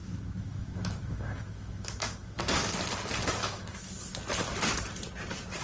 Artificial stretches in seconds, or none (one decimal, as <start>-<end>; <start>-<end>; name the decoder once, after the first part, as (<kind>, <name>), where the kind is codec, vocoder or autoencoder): 0.0-2.5 (autoencoder, DAC-VAE); 3.4-3.9